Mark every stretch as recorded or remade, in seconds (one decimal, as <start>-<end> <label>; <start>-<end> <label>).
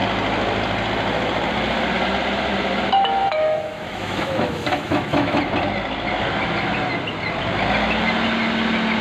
0.0-3.2 recorded; 3.2-5.4 remade; 5.4-9.0 recorded